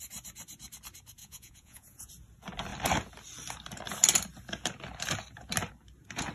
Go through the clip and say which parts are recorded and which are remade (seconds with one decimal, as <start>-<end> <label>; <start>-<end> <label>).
0.0-1.2 recorded; 1.2-2.1 remade; 2.1-6.3 recorded